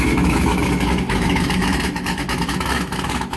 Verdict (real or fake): fake